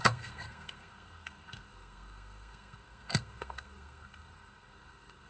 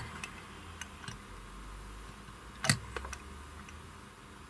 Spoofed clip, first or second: first